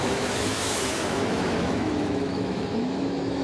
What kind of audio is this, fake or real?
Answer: fake